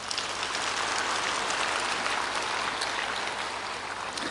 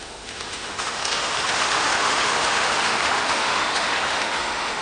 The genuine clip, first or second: first